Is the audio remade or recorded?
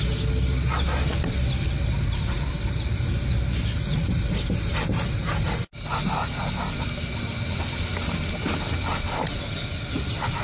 recorded